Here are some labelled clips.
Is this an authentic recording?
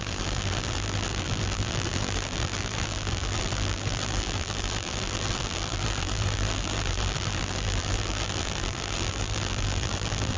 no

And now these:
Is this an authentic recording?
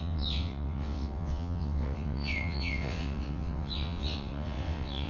no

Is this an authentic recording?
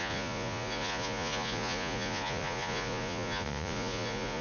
no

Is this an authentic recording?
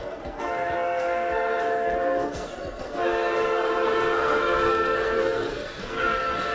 no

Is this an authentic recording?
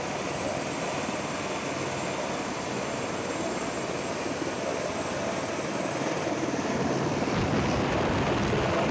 yes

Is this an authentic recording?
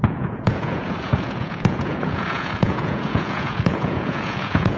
no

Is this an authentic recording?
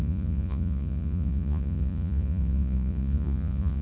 no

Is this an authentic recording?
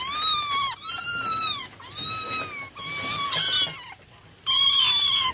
yes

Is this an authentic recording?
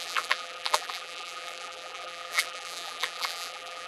no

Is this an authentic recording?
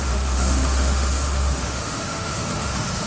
no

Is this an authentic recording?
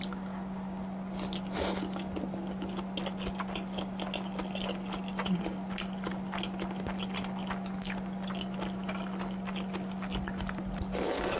yes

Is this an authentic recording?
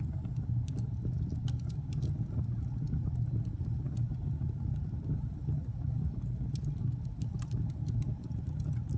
yes